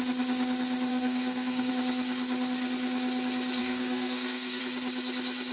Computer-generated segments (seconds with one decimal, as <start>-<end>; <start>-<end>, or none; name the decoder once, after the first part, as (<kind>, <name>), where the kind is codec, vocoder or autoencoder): 0.9-1.7 (codec, SNAC); 3.6-4.6